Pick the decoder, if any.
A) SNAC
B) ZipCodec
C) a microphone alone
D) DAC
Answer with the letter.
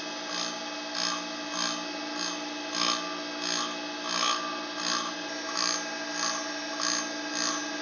C